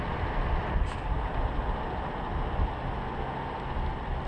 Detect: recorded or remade recorded